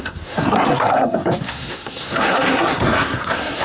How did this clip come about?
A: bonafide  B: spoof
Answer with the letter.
B